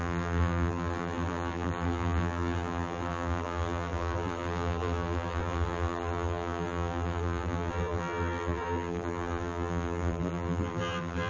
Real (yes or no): no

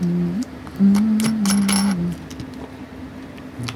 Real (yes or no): yes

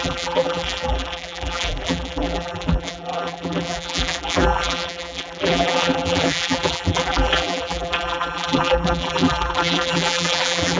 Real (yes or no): no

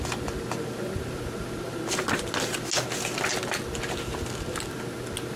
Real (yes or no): yes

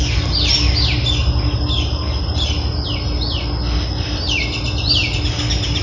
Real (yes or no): yes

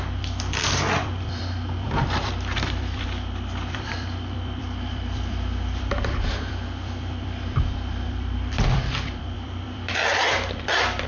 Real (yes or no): no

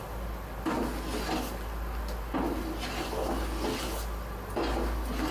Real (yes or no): yes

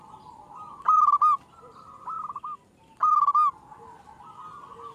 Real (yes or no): yes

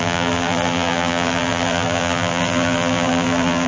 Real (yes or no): no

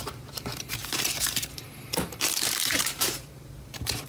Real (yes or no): no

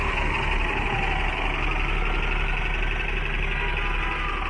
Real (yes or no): yes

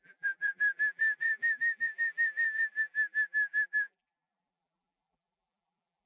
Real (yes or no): no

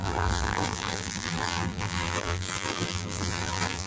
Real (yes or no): no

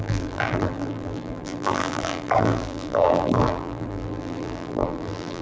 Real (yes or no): no